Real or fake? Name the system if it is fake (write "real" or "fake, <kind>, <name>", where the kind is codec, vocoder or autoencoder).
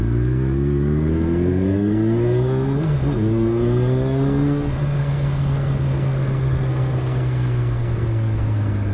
fake, codec, SNAC